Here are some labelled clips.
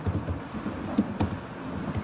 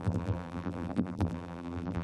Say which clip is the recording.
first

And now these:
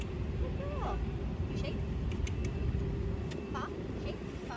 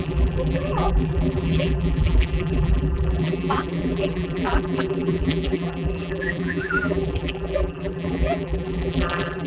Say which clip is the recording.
first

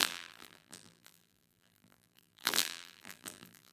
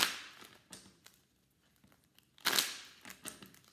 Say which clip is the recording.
second